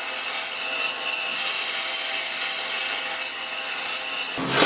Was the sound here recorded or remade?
recorded